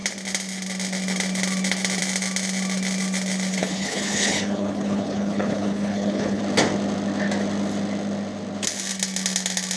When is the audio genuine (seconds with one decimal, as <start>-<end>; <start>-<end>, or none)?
0.0-3.6; 6.4-9.8